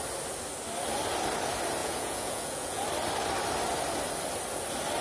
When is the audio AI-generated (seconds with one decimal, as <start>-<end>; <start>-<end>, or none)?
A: 1.8-2.8